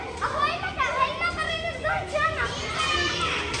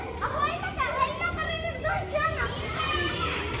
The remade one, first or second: second